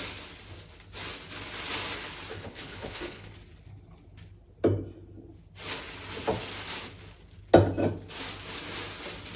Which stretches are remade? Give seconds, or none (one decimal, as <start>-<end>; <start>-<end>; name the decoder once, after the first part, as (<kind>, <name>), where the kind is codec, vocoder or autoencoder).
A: 2.3-3.3 (codec, HILCodec)